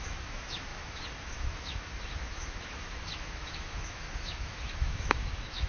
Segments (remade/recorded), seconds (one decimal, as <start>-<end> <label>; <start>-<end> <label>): 0.0-5.7 remade